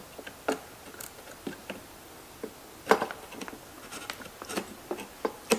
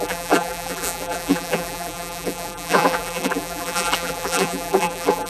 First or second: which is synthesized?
second